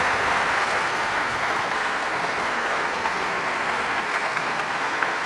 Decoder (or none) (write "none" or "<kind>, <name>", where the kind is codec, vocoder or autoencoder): codec, SNAC